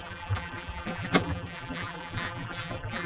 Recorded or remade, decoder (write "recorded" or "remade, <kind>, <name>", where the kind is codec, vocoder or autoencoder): remade, vocoder, BigVGAN v2